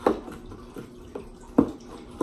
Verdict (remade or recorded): recorded